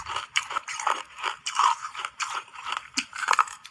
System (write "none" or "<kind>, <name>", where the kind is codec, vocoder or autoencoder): vocoder, BigVGAN v2